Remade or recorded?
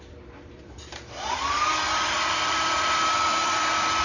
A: remade